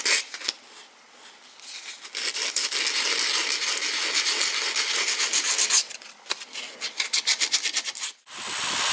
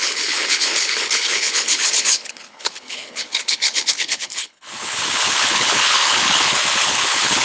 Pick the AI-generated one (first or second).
second